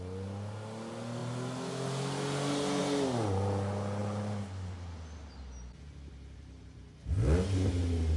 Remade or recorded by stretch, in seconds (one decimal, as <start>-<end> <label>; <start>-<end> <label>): 0.0-8.2 recorded